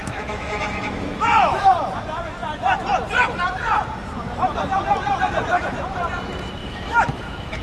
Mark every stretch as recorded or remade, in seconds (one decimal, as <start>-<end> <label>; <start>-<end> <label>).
0.0-1.7 remade; 1.7-6.6 recorded; 6.6-7.6 remade